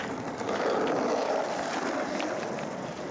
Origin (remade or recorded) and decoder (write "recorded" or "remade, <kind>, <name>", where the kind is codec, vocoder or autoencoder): remade, vocoder, BigVGAN v2